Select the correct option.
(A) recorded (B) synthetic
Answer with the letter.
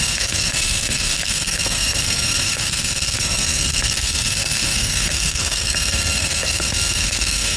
B